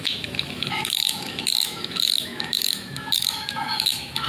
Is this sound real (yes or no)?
no